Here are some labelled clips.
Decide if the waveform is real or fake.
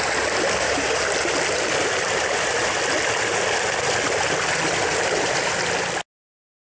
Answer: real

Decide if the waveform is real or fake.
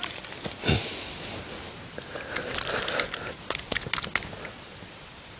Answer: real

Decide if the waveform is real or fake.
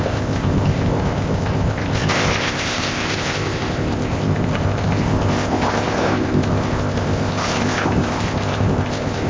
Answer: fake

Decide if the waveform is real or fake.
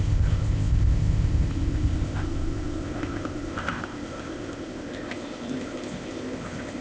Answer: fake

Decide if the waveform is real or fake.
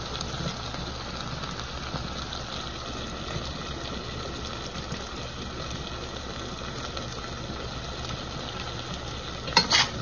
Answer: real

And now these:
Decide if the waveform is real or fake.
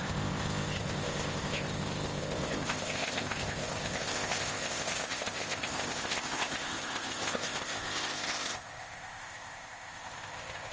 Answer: fake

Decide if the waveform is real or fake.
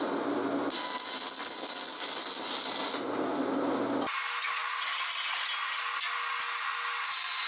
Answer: real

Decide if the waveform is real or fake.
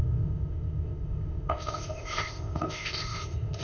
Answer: fake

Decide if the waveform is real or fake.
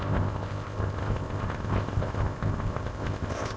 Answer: fake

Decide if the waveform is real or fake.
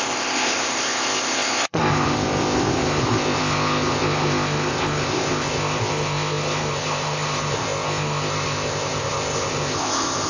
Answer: fake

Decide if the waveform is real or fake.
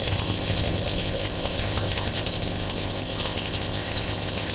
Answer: fake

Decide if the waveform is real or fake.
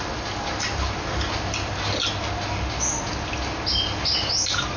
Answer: real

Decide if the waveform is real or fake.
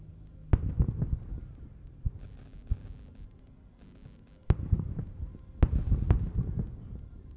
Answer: real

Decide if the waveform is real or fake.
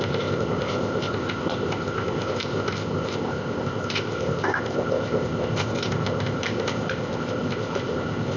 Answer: fake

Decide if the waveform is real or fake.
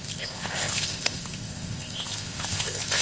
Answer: fake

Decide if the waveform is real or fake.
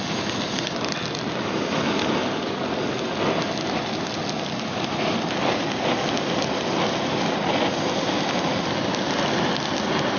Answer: real